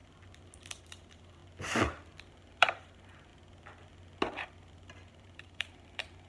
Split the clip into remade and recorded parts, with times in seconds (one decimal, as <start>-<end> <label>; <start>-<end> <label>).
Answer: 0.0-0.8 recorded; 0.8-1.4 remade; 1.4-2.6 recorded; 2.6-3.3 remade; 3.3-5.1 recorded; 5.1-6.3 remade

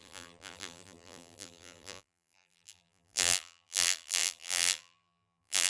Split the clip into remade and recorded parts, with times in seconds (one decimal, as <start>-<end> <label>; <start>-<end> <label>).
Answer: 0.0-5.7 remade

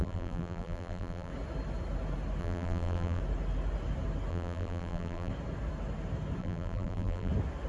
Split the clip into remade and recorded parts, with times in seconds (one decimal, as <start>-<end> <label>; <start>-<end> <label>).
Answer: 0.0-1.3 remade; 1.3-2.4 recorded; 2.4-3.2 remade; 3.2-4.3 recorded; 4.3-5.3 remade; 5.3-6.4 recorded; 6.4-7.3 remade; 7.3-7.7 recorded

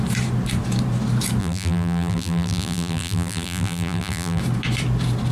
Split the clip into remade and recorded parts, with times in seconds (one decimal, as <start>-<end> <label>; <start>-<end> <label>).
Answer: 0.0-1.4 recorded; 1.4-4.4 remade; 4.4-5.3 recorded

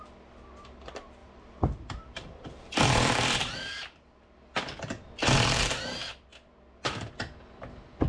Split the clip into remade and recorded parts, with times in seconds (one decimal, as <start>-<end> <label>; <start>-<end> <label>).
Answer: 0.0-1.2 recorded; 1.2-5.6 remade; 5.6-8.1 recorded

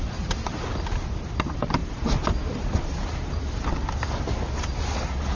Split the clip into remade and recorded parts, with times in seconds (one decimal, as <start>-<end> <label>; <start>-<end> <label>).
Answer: 0.0-1.8 remade; 1.8-4.5 recorded; 4.5-5.4 remade

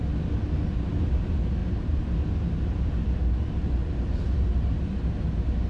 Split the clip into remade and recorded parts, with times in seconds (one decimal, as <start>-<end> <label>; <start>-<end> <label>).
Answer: 0.0-5.7 recorded

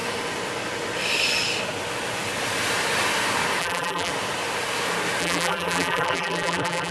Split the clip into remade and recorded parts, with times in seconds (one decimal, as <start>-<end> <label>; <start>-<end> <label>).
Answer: 0.0-3.6 recorded; 3.6-4.1 remade; 4.1-5.2 recorded; 5.2-6.9 remade